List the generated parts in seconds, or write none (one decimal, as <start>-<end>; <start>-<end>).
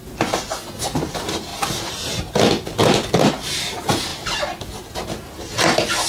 none